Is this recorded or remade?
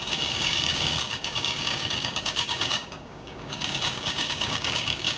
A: remade